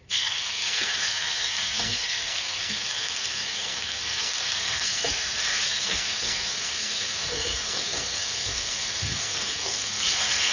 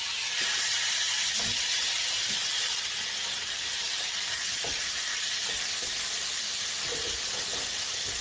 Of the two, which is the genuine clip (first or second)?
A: second